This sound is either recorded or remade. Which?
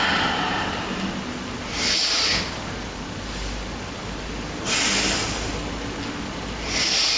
recorded